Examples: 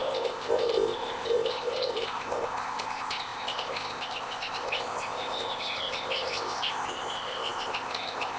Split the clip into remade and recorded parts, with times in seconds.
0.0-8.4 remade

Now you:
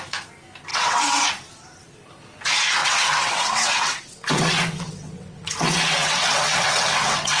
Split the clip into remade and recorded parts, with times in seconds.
0.0-0.7 recorded; 0.7-1.3 remade; 1.3-2.8 recorded; 2.8-7.4 remade

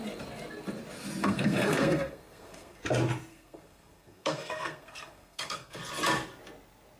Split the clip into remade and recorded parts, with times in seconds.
0.0-1.2 recorded; 1.2-2.8 remade; 2.8-3.3 recorded; 3.3-5.8 remade; 5.8-7.0 recorded

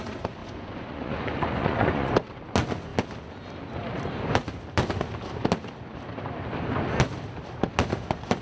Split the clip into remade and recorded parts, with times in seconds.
0.0-0.4 recorded; 0.4-2.1 remade; 2.1-8.4 recorded

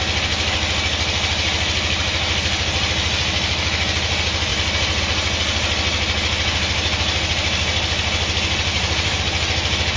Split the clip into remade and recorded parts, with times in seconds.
0.0-4.5 recorded; 4.5-5.0 remade; 5.0-8.7 recorded; 8.7-9.2 remade; 9.2-10.0 recorded

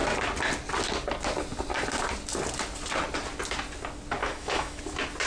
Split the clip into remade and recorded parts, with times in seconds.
0.0-4.2 recorded; 4.2-4.8 remade; 4.8-5.3 recorded